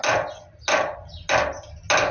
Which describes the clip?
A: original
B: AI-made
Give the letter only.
A